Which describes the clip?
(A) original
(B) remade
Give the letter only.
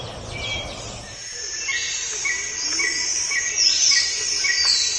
A